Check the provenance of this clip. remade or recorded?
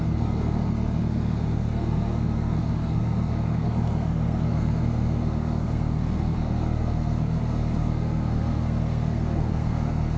remade